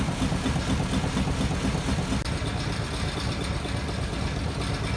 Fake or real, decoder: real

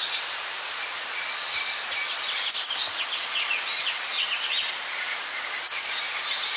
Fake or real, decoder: real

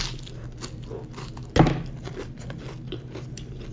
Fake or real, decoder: real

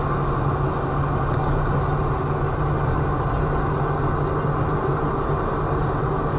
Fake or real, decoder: real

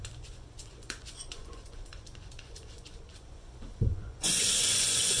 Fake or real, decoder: fake, vocoder, Vocos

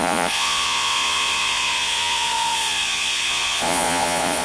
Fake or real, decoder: fake, vocoder, Vocos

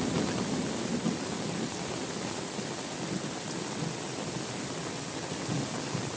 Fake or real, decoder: real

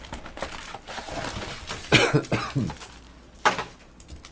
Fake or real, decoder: real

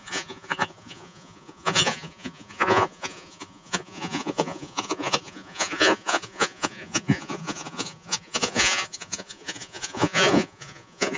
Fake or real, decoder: fake, vocoder, Vocos